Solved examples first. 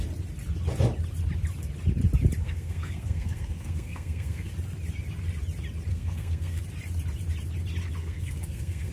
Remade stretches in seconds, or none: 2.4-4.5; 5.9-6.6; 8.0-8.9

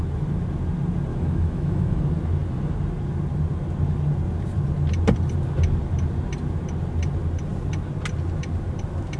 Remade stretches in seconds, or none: 1.1-2.0

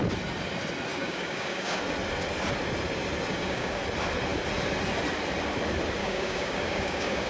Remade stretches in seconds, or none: 0.9-1.8; 3.3-3.8; 6.0-7.3

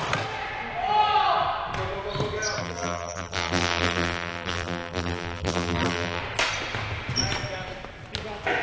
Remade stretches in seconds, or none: 2.6-6.2

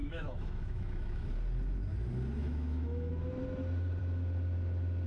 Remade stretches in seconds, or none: 0.0-1.3; 2.4-3.1

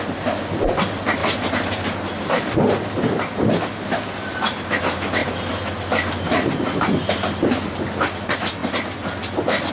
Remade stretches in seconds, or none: none

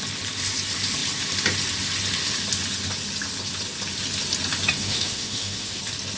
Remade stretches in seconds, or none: 4.8-5.8

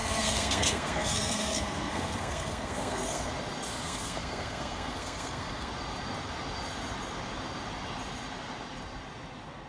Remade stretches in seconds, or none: 0.0-3.3; 3.7-5.7